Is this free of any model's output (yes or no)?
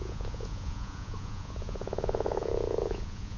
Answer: no